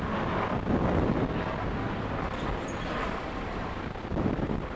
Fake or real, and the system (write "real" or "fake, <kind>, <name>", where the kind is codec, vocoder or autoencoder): real